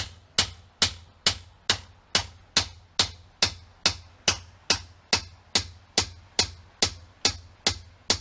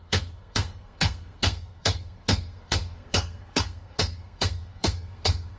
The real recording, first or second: first